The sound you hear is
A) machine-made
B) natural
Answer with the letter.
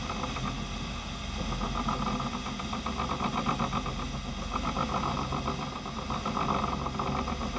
B